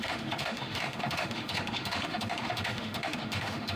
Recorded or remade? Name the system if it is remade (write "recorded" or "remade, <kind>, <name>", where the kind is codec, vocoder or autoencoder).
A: remade, autoencoder, DAC-VAE